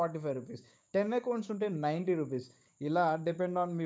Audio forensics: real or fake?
fake